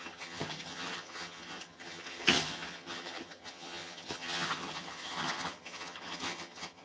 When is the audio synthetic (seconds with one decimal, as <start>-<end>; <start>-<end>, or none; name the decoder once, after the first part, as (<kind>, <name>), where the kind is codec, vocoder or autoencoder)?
0.0-6.8 (vocoder, HiFi-GAN)